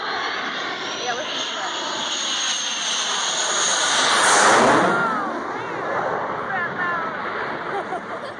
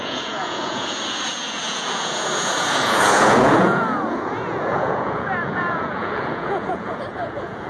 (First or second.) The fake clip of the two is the second